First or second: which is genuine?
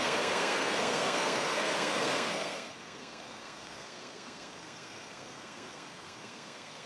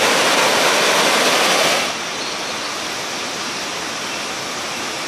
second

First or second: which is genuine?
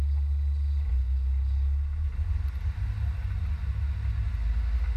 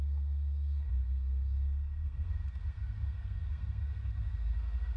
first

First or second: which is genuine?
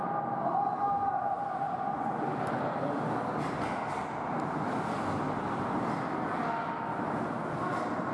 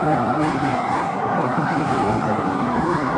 first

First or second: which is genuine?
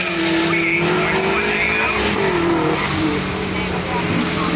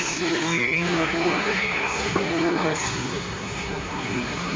first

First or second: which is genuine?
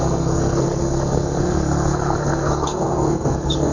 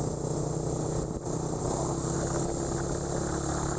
second